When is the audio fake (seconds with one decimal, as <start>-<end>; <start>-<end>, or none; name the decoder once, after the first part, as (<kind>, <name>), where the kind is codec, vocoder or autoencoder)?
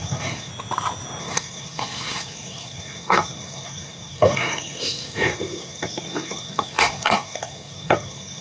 0.0-0.5 (codec, SNAC); 1.2-8.4